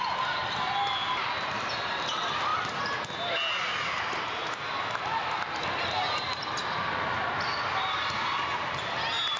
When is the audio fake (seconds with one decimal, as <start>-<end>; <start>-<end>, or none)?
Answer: none

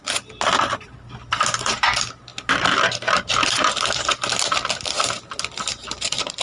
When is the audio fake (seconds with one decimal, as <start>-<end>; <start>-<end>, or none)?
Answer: none

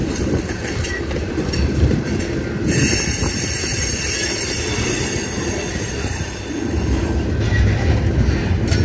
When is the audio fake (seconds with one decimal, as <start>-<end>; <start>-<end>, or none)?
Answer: 0.0-2.2; 3.7-7.1

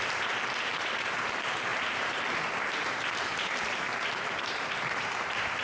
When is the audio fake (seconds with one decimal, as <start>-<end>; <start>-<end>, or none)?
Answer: 0.0-5.6

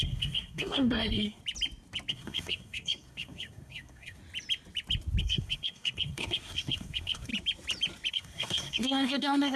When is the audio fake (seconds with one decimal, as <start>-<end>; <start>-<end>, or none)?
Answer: 0.0-1.4; 2.1-4.2; 5.2-7.3; 8.1-9.6

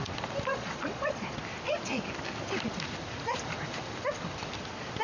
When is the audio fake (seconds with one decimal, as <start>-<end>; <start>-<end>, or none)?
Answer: 0.5-1.4